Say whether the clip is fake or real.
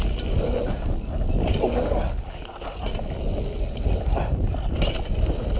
real